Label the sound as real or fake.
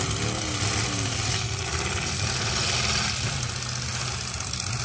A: real